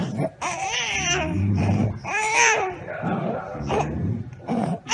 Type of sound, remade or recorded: remade